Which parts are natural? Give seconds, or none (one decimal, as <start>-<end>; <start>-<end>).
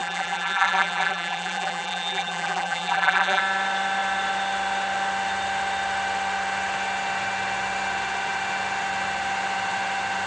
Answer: 3.4-10.3